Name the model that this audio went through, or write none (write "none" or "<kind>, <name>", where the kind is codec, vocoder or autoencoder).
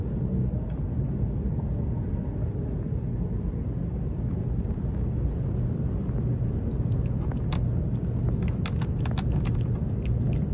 none